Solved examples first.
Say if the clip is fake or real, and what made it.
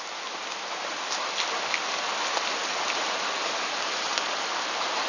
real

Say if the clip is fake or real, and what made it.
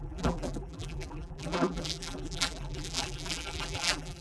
fake, vocoder, BigVGAN v2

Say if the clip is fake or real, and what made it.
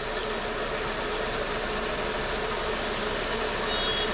real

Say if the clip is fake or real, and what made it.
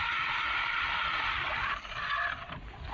real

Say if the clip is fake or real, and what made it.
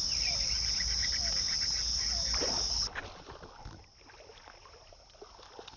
real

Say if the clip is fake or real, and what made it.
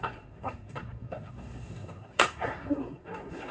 fake, codec, SNAC